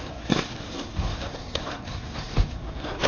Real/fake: fake